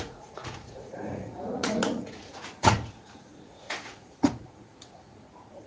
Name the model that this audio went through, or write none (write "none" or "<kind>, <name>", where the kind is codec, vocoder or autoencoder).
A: vocoder, Vocos